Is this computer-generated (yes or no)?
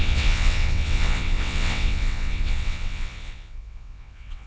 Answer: yes